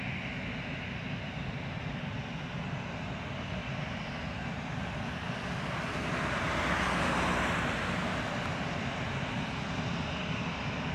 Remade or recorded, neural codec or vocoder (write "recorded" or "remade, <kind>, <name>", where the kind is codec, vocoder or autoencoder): recorded